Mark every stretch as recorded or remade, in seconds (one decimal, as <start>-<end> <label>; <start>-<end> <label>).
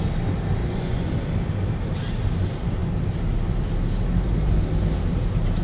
0.0-0.6 recorded; 0.6-1.1 remade; 1.1-5.6 recorded